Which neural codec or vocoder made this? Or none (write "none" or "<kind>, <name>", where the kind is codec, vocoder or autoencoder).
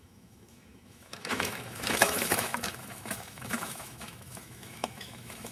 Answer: autoencoder, DAC-VAE